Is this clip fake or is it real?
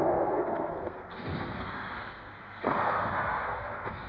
fake